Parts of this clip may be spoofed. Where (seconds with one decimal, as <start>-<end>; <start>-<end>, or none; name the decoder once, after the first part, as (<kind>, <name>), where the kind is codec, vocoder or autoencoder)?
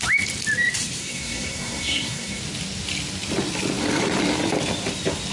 1.0-2.4 (codec, SNAC)